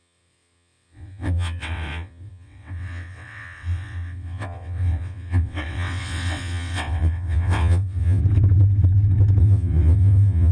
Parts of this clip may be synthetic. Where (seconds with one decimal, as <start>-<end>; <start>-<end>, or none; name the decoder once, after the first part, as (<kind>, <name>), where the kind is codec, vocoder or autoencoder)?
0.0-8.2 (vocoder, WaveNeXt); 9.4-10.5

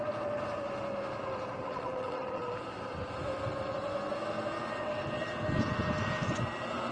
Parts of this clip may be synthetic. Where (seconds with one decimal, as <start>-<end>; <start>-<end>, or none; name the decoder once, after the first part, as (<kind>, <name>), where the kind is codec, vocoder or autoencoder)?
1.6-2.4 (vocoder, WaveNeXt)

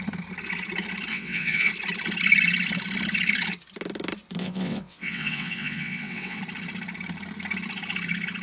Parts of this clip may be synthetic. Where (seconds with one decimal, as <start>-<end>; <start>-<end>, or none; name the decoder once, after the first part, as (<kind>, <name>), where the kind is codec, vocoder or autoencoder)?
1.1-1.7 (vocoder, WaveNeXt); 4.4-6.4

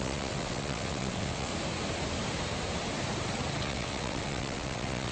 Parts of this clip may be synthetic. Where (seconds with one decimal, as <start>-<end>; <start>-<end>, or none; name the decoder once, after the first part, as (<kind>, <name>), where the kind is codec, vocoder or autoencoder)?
0.0-1.5 (vocoder, WaveNeXt); 3.6-5.1

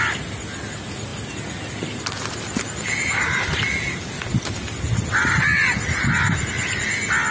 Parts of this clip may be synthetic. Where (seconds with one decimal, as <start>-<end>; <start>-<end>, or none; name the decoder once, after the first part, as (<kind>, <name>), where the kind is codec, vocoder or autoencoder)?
none